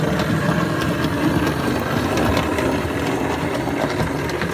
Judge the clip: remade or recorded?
recorded